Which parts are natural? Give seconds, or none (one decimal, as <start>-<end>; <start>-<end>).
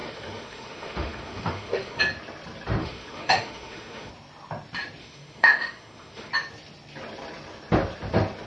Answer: 2.0-2.8; 4.1-5.0; 6.3-8.5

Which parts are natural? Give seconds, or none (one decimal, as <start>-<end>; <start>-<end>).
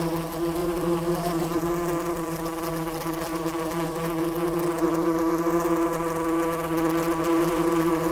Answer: 0.0-0.6; 4.2-8.1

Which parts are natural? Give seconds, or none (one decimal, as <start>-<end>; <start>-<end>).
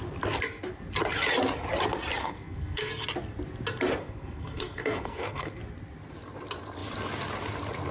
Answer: 0.0-2.2; 2.9-4.0; 5.6-7.9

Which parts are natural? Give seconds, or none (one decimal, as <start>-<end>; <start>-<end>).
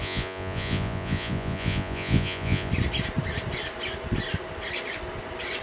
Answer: 2.7-5.6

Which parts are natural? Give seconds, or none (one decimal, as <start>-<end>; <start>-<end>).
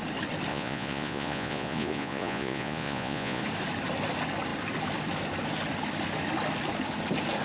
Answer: 0.0-0.5; 3.4-7.4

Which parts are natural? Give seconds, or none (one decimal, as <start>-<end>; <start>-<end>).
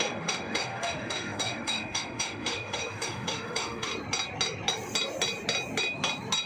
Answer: 3.9-6.5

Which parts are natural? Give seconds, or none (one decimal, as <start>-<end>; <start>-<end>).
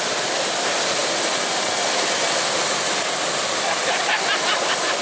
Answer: 0.0-5.0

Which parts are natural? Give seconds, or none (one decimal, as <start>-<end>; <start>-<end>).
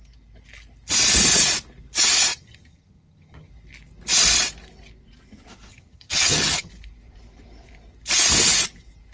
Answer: 0.0-2.3; 3.5-5.7; 6.7-9.1